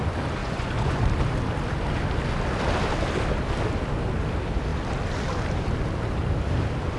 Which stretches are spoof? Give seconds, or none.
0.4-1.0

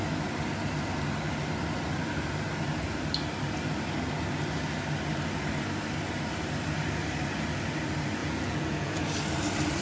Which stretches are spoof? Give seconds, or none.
8.2-9.0

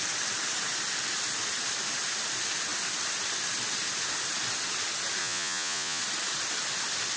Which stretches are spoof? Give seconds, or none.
5.2-6.0

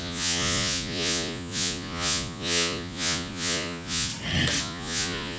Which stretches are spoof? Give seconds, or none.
0.0-4.1; 4.6-5.4

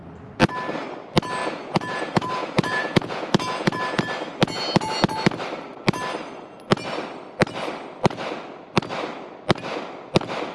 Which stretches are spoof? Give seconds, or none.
1.4-4.0

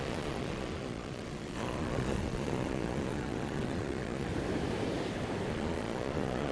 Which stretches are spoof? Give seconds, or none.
0.0-4.3; 5.5-6.5